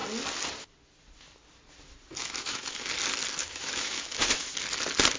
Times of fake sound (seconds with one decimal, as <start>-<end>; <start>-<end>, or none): 2.2-2.9; 3.4-4.5